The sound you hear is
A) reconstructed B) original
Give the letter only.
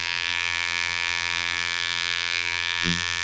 A